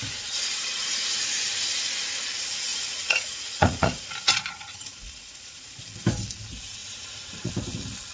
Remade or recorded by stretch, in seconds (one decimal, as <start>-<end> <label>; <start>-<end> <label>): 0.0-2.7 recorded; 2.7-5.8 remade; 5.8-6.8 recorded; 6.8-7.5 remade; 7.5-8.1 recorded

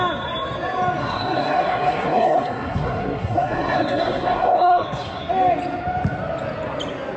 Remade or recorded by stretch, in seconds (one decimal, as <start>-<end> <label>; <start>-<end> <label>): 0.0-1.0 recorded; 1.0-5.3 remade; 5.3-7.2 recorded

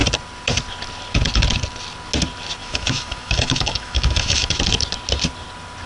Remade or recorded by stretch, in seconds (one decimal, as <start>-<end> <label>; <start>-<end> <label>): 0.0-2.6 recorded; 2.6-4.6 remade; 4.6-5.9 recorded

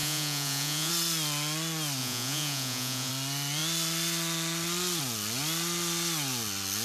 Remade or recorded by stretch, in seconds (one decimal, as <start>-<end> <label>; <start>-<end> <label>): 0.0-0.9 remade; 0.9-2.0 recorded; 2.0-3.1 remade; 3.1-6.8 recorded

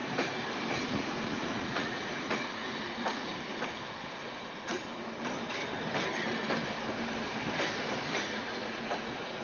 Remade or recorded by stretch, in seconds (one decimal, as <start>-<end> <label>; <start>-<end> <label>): 0.0-0.7 recorded; 0.7-3.3 remade; 3.3-4.2 recorded; 4.2-4.8 remade; 4.8-8.2 recorded; 8.2-9.4 remade